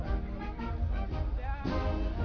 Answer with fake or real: real